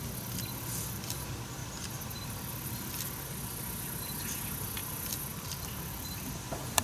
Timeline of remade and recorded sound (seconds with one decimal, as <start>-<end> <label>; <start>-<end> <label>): 0.0-6.8 recorded